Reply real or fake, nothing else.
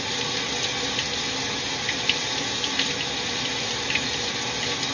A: real